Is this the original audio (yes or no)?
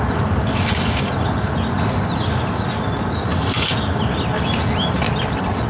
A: yes